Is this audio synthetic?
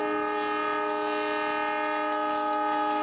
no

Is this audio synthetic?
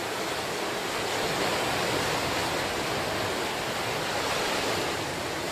no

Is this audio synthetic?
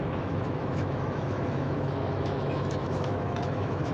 yes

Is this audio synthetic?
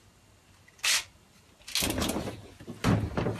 no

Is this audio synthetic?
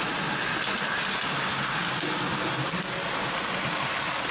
no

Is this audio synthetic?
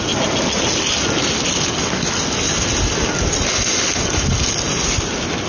no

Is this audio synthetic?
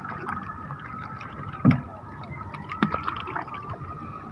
yes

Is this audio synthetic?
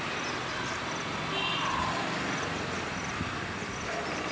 no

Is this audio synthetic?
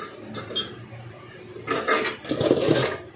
no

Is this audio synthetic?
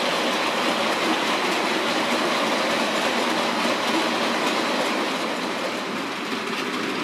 no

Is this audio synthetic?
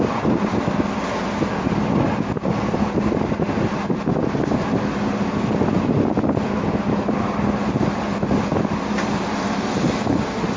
no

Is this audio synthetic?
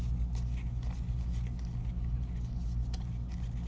no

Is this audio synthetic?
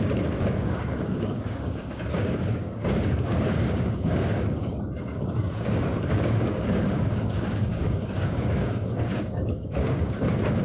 yes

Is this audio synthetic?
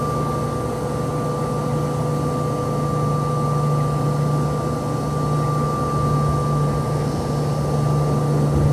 no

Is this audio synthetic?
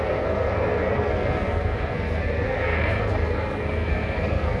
yes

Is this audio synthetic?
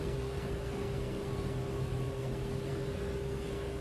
yes